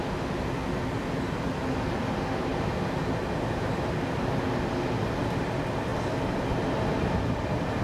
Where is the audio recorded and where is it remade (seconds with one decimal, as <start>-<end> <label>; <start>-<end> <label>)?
0.0-7.8 recorded